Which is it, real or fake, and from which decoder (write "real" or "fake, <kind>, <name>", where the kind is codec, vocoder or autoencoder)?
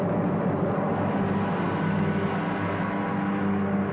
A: real